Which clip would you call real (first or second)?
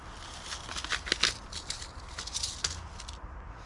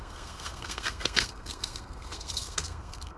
first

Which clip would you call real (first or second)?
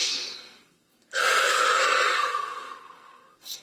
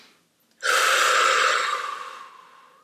second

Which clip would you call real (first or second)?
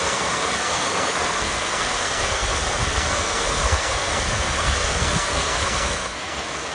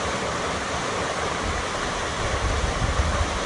second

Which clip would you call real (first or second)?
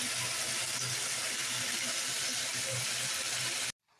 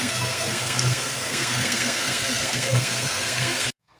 first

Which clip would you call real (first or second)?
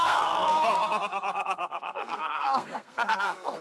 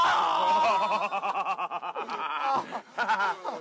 second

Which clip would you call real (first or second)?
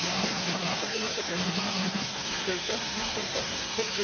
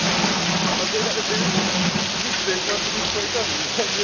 second